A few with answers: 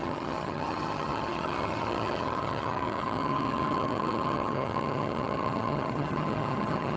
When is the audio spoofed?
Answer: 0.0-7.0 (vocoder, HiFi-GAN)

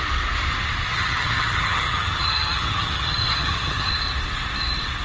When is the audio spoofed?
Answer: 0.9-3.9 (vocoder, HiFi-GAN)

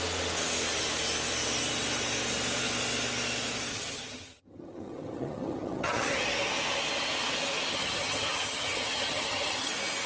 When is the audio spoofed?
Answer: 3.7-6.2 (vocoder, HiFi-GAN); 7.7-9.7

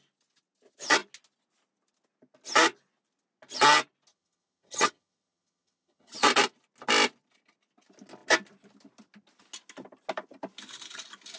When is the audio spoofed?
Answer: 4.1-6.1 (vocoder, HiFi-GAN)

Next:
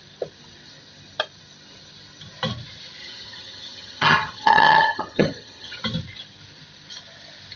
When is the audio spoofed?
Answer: 3.0-5.8 (vocoder, HiFi-GAN)